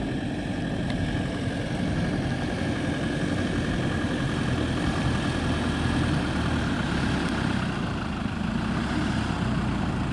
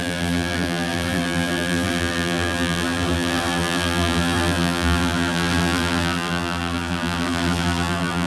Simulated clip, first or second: second